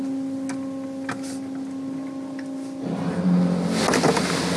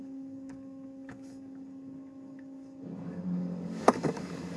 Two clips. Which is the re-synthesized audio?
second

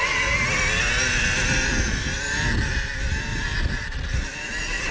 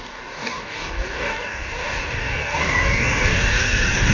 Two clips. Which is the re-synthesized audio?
second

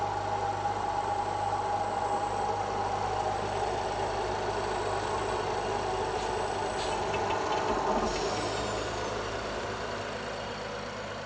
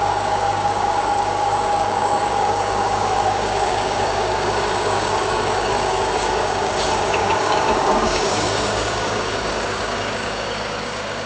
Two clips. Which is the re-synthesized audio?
second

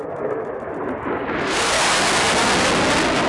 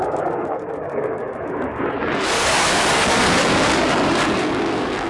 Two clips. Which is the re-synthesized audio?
second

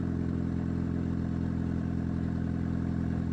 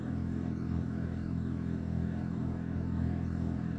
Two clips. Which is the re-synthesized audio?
second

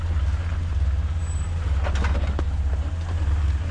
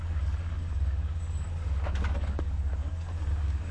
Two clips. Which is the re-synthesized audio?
second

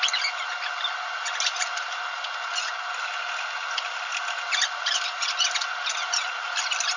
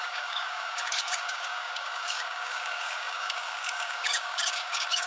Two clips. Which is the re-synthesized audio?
second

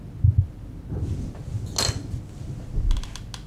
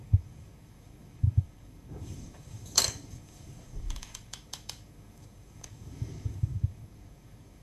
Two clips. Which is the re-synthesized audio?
second